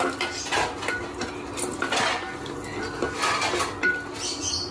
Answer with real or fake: real